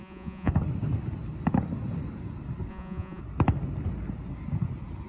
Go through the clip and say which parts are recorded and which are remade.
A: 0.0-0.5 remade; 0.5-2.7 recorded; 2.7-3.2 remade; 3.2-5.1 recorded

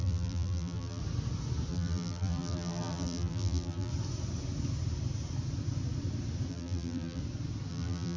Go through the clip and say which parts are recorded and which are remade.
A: 0.0-1.0 remade; 1.0-1.7 recorded; 1.7-3.9 remade; 3.9-6.5 recorded; 6.5-7.2 remade; 7.2-7.7 recorded; 7.7-8.2 remade

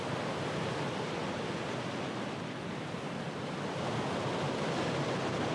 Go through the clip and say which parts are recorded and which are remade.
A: 0.0-5.5 recorded

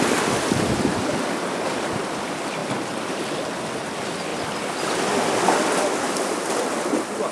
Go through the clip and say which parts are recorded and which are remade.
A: 0.0-4.3 remade; 4.3-5.0 recorded; 5.0-7.3 remade

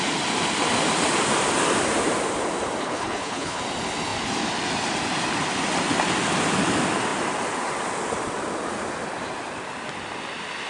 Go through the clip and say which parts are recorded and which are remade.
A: 0.0-2.8 recorded; 2.8-3.6 remade; 3.6-10.7 recorded